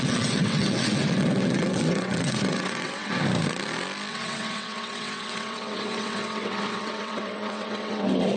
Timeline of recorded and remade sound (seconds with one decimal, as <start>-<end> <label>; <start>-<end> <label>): 0.0-3.2 remade; 3.2-4.1 recorded; 4.1-8.4 remade

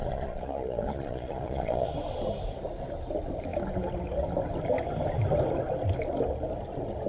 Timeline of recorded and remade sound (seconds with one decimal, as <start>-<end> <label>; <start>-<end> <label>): 0.0-1.9 remade; 1.9-7.1 recorded

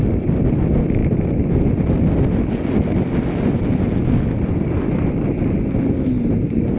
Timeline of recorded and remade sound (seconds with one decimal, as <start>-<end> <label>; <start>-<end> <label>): 0.0-6.8 recorded